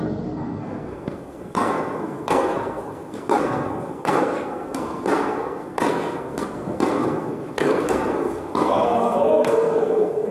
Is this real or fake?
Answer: fake